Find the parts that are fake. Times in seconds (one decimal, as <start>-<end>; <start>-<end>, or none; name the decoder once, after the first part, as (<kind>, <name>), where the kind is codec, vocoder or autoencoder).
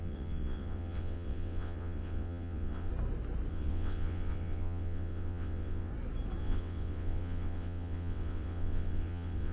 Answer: 0.0-2.9 (vocoder, WaveNeXt); 3.5-5.9; 6.4-9.5